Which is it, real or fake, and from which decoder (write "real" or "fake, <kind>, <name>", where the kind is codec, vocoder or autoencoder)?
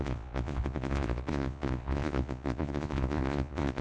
fake, vocoder, Vocos